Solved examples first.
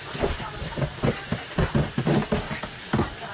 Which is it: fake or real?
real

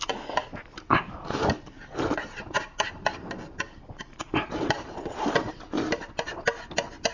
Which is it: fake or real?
real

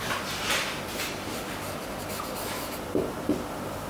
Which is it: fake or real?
real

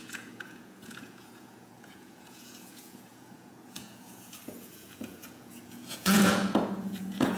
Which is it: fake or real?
fake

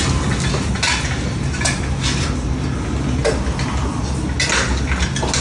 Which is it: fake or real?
real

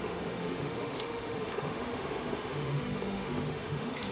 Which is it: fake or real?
fake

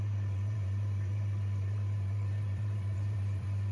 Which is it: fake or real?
fake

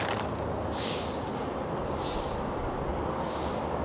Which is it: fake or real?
real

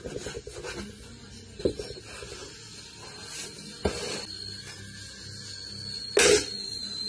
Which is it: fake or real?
real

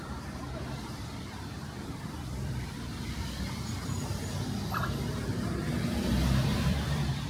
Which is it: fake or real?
fake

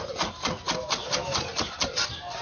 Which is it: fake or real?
real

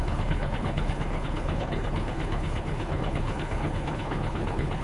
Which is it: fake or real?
fake